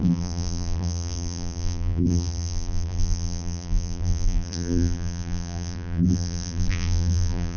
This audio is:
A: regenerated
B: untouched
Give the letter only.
A